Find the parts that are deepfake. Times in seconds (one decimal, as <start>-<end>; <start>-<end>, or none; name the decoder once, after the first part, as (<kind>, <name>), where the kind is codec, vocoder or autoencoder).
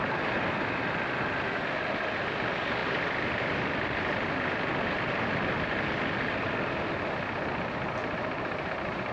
8.0-8.7 (vocoder, BigVGAN v2)